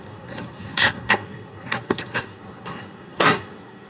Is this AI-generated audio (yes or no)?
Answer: yes